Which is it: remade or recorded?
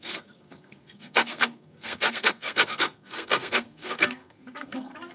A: remade